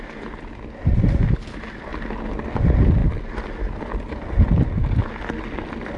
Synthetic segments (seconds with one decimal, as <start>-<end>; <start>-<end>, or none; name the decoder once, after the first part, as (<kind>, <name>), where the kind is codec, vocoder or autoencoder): none